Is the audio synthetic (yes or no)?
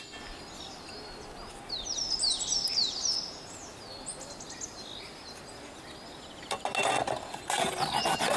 no